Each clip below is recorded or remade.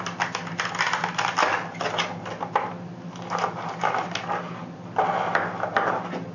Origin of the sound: recorded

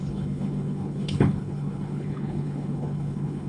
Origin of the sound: remade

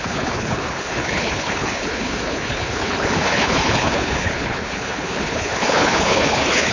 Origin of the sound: remade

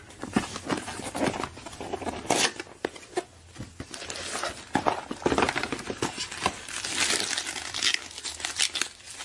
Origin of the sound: recorded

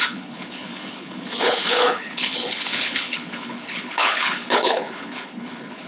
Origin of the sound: remade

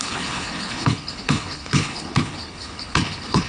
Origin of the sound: remade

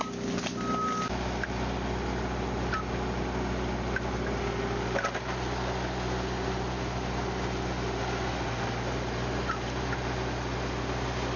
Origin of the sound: recorded